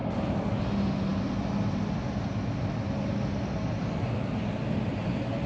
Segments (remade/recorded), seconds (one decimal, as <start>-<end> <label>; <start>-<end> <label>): 0.0-5.5 recorded